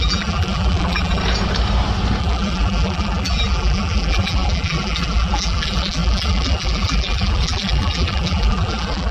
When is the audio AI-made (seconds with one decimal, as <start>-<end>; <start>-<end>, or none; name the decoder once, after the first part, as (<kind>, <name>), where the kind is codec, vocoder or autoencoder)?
0.0-1.2 (vocoder, BigVGAN v2); 2.2-9.1

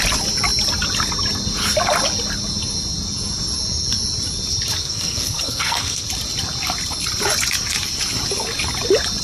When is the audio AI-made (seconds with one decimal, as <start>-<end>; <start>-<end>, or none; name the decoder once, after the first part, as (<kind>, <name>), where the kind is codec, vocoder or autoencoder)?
4.8-6.1 (codec, SNAC)

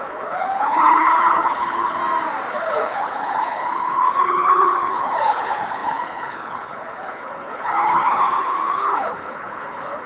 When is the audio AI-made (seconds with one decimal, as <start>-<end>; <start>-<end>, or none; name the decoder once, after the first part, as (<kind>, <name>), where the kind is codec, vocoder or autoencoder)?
0.0-2.0 (codec, HILCodec); 2.5-10.1